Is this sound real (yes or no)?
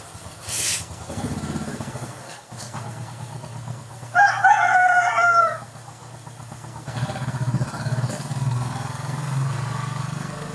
no